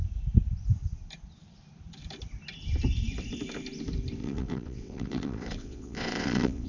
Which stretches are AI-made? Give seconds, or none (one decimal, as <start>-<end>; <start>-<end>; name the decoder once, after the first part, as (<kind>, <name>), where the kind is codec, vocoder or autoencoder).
4.2-6.7 (vocoder, WaveNeXt)